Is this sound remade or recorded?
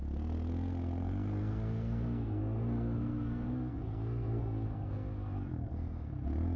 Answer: remade